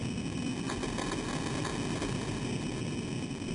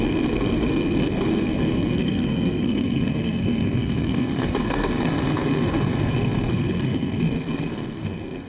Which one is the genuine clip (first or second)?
first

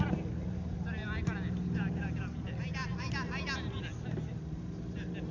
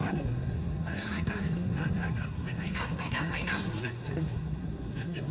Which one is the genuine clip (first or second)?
first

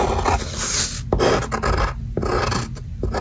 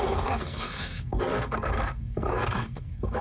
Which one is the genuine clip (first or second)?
first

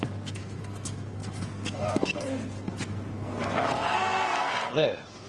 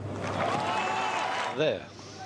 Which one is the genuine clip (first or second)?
second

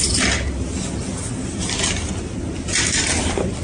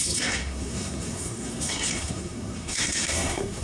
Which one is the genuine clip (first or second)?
first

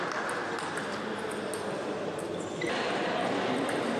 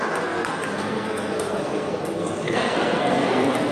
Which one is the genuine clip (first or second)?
first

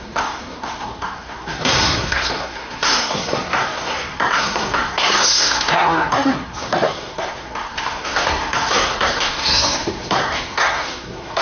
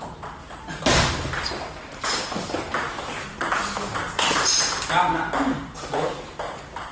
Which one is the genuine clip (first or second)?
second